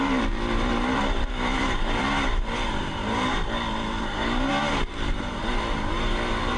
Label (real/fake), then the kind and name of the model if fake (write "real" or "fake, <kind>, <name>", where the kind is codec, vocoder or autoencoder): fake, vocoder, BigVGAN v2